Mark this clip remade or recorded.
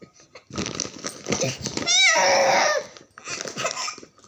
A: recorded